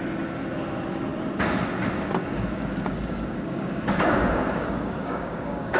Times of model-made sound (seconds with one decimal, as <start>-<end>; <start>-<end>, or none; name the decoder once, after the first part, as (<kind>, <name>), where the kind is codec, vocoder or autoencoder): 2.2-5.8 (codec, DAC)